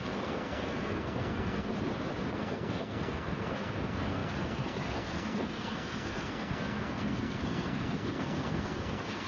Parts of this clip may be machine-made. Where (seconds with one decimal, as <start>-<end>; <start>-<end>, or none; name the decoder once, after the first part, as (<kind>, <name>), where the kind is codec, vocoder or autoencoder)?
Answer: 0.0-1.7 (codec, SNAC); 2.3-9.3